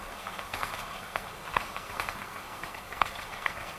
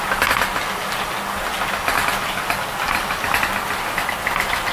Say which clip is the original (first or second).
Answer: second